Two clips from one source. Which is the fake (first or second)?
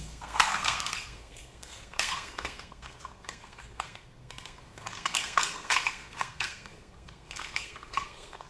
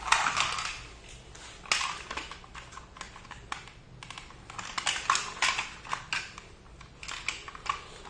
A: first